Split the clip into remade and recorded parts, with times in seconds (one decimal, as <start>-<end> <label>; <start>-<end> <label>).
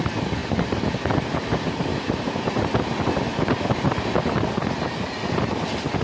0.0-0.4 recorded; 0.4-1.0 remade; 1.0-1.9 recorded; 1.9-2.8 remade; 2.8-3.3 recorded; 3.3-4.2 remade; 4.2-6.0 recorded